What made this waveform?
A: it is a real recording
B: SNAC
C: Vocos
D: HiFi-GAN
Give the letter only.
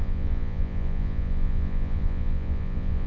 C